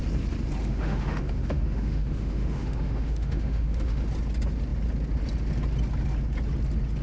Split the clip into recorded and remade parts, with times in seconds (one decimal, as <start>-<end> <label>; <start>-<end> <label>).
0.0-0.6 recorded; 0.6-4.0 remade; 4.0-7.0 recorded